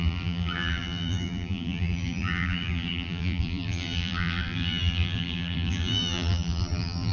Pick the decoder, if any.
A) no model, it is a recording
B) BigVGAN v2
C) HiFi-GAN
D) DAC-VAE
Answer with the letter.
B